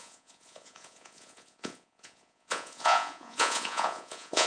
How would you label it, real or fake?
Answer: fake